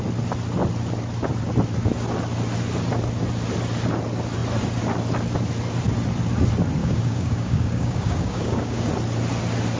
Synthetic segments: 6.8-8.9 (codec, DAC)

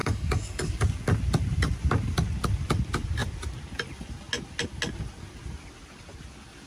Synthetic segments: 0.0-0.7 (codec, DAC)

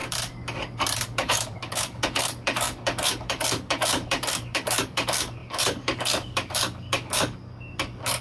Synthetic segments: 0.0-8.2 (codec, DAC)

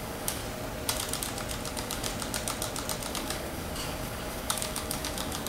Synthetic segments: 0.0-0.4 (codec, DAC); 1.7-2.1; 3.1-5.5